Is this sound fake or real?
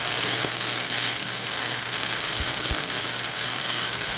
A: fake